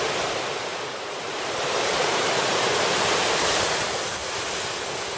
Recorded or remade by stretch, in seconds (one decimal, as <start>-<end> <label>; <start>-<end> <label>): 0.0-0.7 recorded; 0.7-3.8 remade; 3.8-5.2 recorded